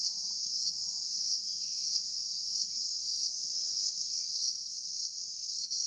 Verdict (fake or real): fake